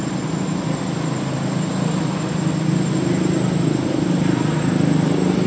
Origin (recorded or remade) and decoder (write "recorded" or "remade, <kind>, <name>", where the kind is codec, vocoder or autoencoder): recorded